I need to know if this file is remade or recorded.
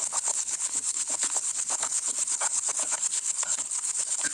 remade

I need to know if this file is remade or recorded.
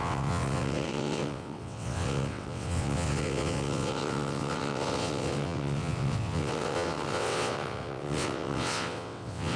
remade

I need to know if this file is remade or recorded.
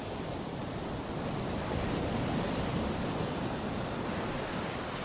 recorded